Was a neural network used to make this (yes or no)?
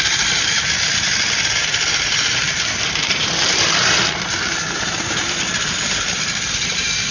yes